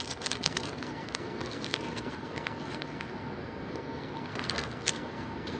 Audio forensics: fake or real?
fake